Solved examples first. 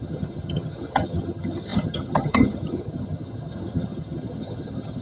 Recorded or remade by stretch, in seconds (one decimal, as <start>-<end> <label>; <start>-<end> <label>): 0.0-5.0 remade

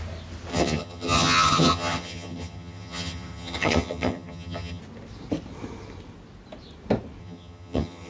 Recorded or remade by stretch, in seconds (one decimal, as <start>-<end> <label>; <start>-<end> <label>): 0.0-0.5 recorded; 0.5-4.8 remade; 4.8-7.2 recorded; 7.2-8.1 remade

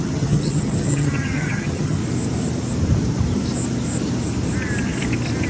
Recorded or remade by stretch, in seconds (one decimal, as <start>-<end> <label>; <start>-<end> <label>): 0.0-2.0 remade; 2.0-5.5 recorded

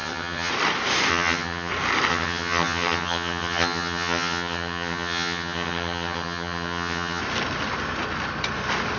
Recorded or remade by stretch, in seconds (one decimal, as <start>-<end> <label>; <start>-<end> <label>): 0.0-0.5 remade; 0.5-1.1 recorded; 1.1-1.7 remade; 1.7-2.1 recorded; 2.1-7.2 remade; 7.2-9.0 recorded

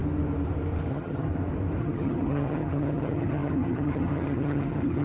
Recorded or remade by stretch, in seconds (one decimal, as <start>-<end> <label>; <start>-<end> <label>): 0.0-0.9 recorded; 0.9-1.3 remade; 1.3-1.8 recorded; 1.8-5.0 remade

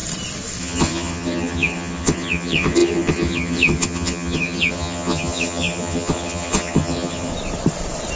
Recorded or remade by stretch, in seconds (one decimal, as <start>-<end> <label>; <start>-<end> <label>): 0.0-0.6 recorded; 0.6-7.3 remade; 7.3-8.2 recorded

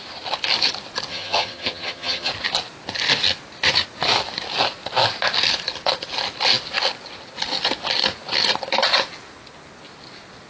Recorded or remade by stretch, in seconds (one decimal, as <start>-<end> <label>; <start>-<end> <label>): 0.0-1.1 recorded; 1.1-2.3 remade; 2.3-10.5 recorded